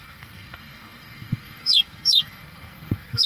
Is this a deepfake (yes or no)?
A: yes